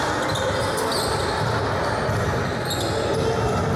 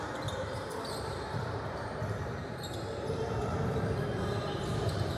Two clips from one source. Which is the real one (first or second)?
first